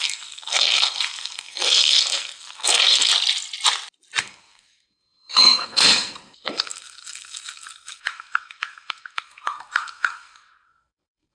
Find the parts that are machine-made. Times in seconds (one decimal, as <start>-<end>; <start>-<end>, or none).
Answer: 0.0-3.1; 4.2-11.3